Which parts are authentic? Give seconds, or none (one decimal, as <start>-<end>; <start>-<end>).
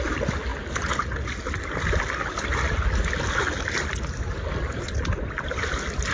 0.0-6.1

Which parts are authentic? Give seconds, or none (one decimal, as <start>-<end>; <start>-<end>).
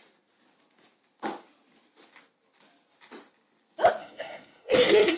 0.0-4.0